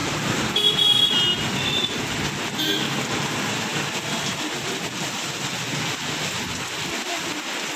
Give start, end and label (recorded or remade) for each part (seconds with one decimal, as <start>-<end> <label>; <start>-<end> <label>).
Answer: 0.0-0.6 remade; 0.6-7.8 recorded